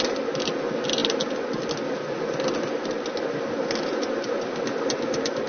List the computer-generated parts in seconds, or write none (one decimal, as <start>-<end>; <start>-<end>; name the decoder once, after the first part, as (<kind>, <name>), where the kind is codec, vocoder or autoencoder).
none